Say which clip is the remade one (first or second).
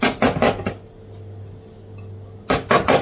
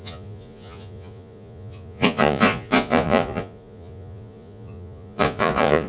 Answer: second